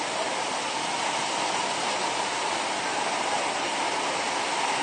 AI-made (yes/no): no